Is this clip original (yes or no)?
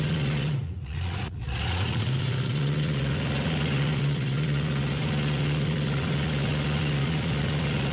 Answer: no